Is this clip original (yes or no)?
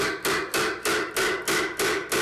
yes